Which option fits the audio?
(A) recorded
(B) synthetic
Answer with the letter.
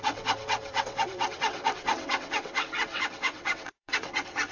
B